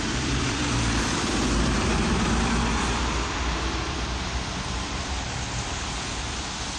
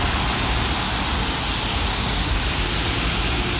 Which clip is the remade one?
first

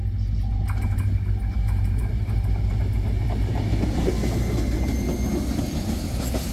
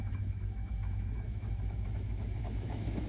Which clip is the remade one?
second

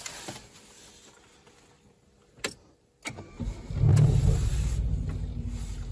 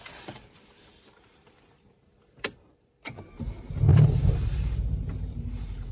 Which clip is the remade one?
second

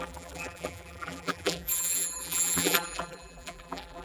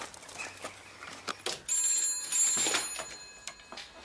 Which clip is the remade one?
first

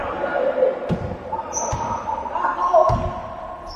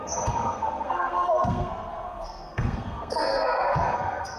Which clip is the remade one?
second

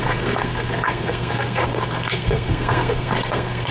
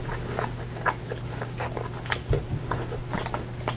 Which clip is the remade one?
first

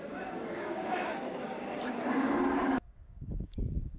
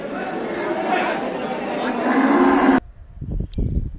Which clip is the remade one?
first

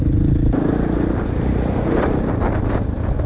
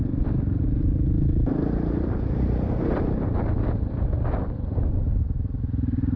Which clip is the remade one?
second